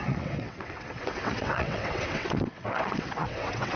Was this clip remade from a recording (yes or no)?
yes